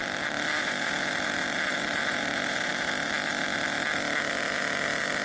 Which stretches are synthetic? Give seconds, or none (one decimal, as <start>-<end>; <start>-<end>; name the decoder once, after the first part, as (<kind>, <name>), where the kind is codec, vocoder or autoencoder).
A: 0.0-3.1 (vocoder, BigVGAN v2)